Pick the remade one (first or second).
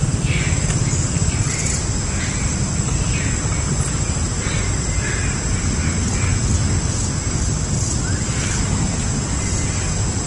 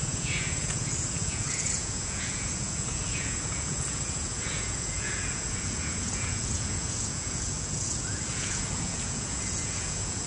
second